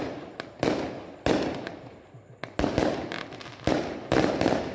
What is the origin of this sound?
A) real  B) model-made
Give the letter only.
A